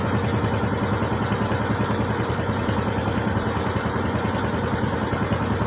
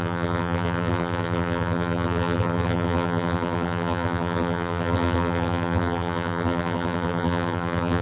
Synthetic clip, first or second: second